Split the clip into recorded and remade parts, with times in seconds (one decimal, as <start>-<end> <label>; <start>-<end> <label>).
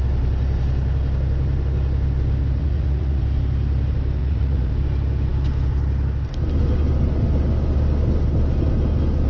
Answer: 0.0-2.6 recorded; 2.6-3.2 remade; 3.2-4.2 recorded; 4.2-4.7 remade; 4.7-9.3 recorded